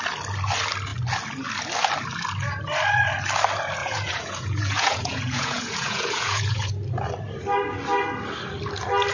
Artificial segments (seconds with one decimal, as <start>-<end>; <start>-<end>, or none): 3.8-6.7